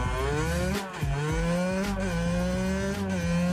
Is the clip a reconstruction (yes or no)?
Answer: no